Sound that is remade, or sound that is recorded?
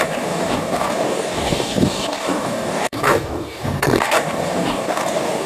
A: remade